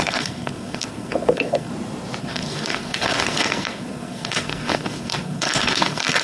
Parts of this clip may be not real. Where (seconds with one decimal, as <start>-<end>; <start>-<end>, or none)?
0.0-1.7; 2.2-6.2